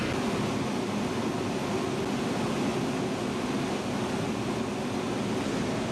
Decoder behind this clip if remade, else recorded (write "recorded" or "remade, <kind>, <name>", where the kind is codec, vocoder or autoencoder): recorded